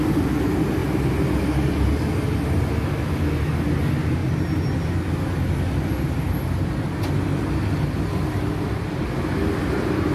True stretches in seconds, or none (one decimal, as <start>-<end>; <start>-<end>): 0.0-10.1